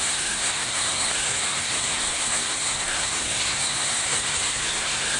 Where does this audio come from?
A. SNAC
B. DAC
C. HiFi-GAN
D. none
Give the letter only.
A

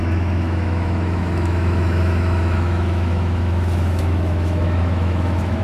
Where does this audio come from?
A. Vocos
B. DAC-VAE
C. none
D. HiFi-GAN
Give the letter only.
B